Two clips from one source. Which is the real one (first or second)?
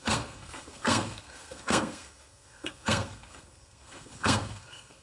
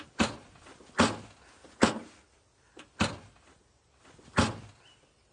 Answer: second